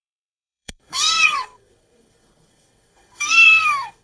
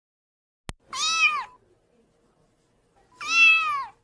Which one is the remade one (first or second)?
first